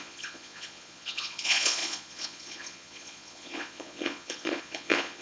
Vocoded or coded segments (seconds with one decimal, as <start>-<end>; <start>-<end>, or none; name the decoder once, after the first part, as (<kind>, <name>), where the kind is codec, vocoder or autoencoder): 0.0-5.2 (vocoder, Vocos)

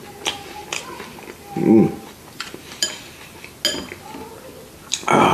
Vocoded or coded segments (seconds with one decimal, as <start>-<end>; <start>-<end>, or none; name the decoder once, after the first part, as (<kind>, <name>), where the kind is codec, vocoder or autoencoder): 0.6-2.9 (vocoder, BigVGAN v2)